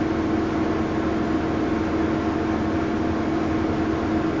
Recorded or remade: recorded